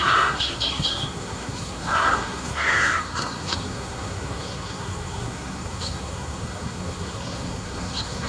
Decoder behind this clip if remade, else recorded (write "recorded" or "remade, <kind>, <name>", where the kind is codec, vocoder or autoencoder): remade, codec, SNAC